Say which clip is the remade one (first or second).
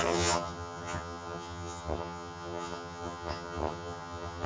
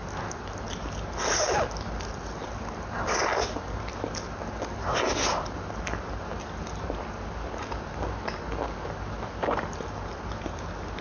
first